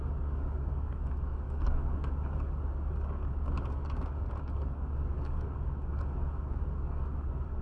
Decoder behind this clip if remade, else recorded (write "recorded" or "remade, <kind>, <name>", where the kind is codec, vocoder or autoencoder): remade, codec, DAC